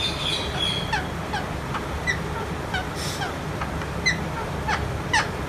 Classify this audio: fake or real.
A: real